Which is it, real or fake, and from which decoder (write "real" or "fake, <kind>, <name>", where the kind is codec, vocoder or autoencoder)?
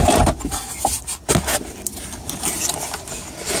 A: real